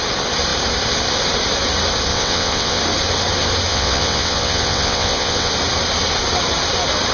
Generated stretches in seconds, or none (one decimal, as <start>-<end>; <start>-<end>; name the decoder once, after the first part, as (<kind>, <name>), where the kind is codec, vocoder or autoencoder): 2.1-2.8 (vocoder, WaveNeXt); 3.7-5.5